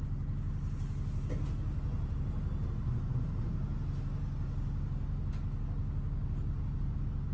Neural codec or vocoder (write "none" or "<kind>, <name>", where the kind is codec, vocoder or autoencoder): none